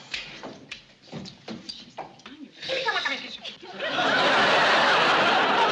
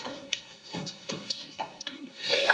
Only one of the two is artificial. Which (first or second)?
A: second